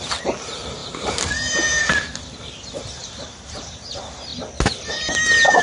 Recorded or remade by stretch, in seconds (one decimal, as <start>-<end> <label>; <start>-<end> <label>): 0.0-0.8 recorded; 0.8-1.3 remade; 1.3-3.0 recorded; 3.0-3.8 remade; 3.8-5.6 recorded